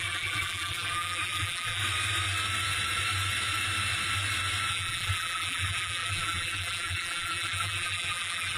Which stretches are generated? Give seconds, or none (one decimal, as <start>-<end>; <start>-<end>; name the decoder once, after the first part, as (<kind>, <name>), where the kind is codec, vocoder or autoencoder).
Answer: 0.0-1.8 (vocoder, BigVGAN v2); 4.7-8.6